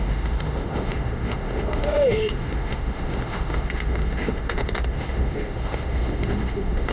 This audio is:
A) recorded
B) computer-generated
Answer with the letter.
B